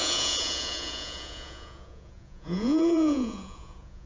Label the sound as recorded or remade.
remade